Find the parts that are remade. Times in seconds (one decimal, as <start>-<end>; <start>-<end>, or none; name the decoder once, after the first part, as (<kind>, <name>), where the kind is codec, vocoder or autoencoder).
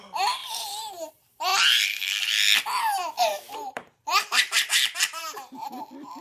0.0-6.2 (vocoder, BigVGAN v2)